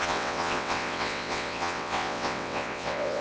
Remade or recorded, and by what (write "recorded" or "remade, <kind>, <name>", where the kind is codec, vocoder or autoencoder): remade, vocoder, WaveNeXt